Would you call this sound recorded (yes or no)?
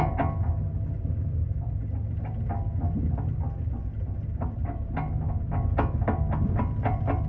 yes